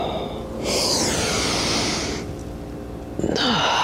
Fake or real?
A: real